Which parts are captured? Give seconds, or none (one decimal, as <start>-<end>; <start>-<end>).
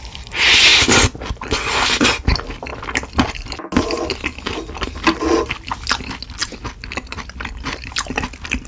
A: 0.0-8.7